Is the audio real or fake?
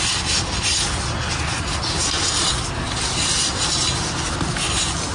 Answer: real